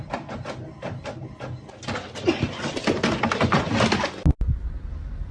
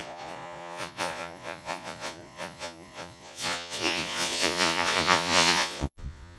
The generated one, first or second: second